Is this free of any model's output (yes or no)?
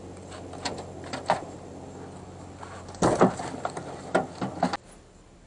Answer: yes